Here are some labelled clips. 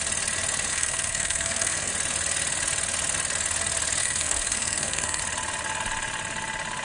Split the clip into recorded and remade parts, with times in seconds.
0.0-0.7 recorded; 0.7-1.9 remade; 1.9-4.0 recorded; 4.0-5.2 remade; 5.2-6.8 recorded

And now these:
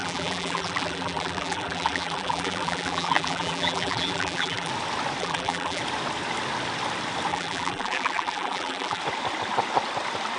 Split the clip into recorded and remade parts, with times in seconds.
0.0-4.7 remade; 4.7-5.2 recorded; 5.2-5.8 remade; 5.8-7.3 recorded; 7.3-9.0 remade; 9.0-10.4 recorded

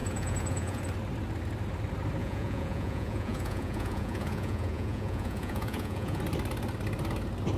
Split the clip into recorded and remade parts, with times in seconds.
0.0-0.8 remade; 0.8-2.2 recorded; 2.2-6.2 remade; 6.2-7.6 recorded